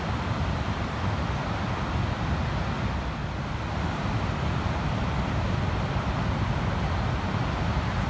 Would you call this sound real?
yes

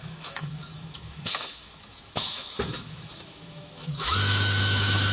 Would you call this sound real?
no